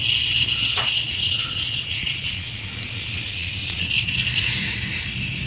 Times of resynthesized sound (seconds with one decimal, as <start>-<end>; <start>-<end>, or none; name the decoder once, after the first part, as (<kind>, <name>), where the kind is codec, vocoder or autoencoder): 0.6-3.9 (vocoder, Vocos)